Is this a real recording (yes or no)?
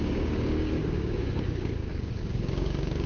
no